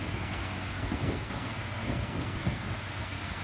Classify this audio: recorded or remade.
remade